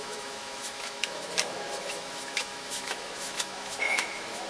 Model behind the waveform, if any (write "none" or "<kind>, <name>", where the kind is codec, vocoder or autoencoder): autoencoder, DAC-VAE